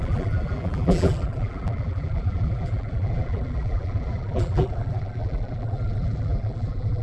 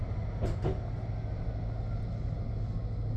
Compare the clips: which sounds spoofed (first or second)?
first